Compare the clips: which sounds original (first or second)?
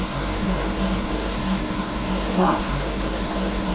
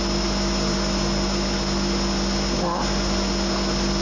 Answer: second